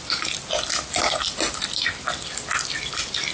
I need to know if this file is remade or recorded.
recorded